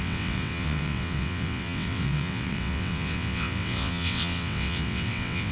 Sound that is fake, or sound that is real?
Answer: fake